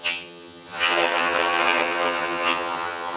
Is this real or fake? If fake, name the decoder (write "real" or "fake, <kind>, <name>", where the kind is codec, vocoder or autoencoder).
fake, vocoder, HiFi-GAN